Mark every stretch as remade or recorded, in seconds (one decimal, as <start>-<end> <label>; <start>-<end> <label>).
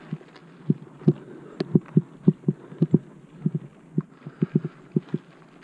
0.0-0.4 recorded; 0.4-1.6 remade; 1.6-3.7 recorded; 3.7-4.6 remade; 4.6-5.6 recorded